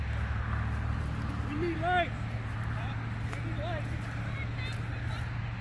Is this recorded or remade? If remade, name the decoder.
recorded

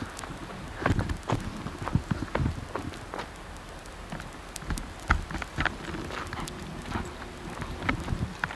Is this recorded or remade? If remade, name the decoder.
recorded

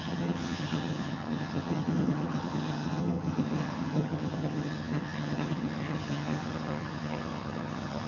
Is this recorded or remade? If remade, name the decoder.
remade, vocoder, HiFi-GAN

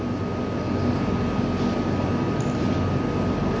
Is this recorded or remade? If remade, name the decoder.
recorded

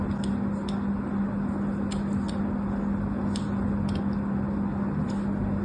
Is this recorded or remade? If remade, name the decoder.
recorded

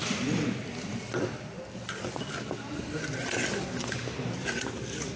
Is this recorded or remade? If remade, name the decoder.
recorded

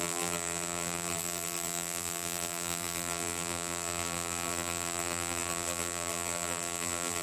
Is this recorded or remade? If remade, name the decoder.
remade, vocoder, BigVGAN v2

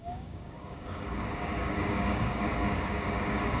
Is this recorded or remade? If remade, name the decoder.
remade, codec, DAC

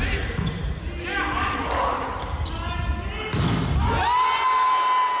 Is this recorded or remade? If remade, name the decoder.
recorded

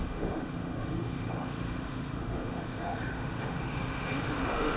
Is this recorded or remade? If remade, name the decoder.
remade, autoencoder, DAC-VAE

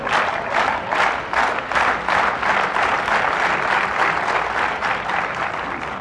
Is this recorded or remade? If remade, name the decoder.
recorded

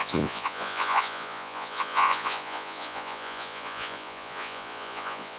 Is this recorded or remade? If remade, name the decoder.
remade, vocoder, Vocos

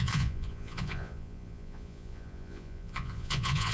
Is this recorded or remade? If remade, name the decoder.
remade, vocoder, Vocos